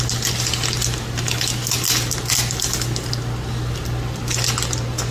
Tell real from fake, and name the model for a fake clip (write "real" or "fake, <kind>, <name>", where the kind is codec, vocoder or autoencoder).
real